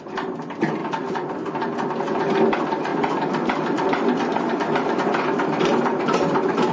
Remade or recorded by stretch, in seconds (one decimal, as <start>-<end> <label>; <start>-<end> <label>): 0.0-0.8 recorded; 0.8-1.3 remade; 1.3-2.9 recorded; 2.9-6.7 remade